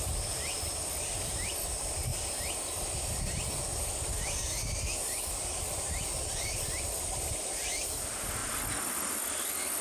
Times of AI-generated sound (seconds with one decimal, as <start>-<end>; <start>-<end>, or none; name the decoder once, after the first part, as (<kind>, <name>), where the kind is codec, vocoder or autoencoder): none